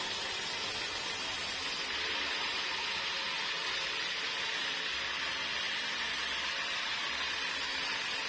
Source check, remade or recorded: recorded